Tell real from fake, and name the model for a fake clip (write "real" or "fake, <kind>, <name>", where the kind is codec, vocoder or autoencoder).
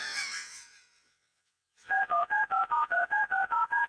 fake, vocoder, WaveNeXt